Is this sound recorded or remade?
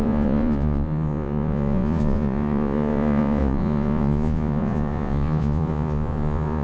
remade